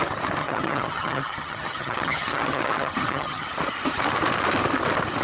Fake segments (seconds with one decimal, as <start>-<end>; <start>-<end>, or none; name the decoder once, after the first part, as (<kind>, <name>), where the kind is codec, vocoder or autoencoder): 0.4-3.5 (vocoder, HiFi-GAN)